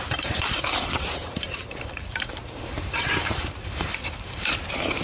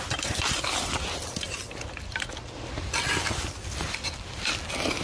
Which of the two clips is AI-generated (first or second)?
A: first